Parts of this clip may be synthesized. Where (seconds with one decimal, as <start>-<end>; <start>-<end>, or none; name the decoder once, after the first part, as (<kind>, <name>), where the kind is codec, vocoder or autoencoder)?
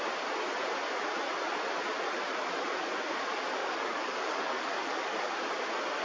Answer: 3.6-5.3 (codec, DAC)